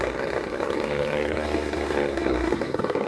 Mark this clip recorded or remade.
remade